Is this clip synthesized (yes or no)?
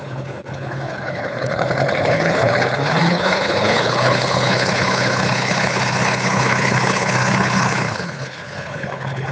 yes